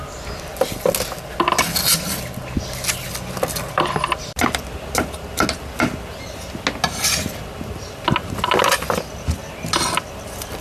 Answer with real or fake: real